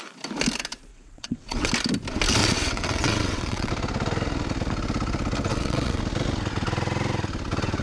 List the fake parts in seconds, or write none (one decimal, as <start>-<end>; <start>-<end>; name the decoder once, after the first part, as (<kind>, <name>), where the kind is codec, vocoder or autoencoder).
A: 0.9-1.7 (vocoder, WaveNeXt); 2.4-3.7; 5.5-6.0